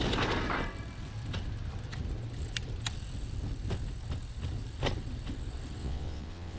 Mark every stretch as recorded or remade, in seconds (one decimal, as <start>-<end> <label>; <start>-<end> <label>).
0.0-5.8 recorded; 5.8-6.6 remade